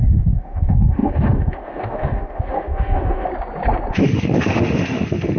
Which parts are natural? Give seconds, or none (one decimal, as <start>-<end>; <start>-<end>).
3.3-3.9